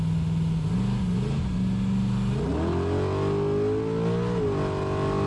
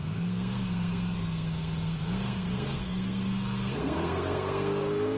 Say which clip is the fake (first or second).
second